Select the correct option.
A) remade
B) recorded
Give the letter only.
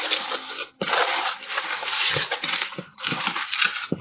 B